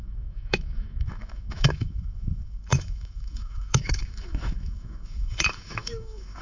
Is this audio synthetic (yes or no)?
yes